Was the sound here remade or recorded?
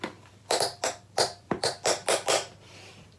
remade